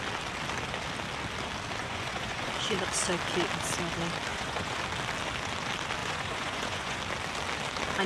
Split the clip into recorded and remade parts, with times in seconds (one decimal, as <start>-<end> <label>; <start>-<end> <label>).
0.0-1.8 recorded; 1.8-2.5 remade; 2.5-4.3 recorded; 4.3-4.8 remade; 4.8-6.0 recorded; 6.0-7.0 remade; 7.0-8.1 recorded